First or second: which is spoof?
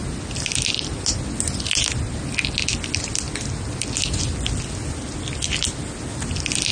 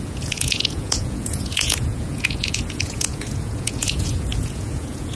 second